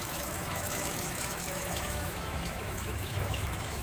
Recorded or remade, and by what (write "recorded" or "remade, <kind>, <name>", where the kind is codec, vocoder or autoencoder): remade, autoencoder, DAC-VAE